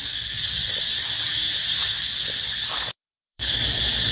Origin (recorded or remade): remade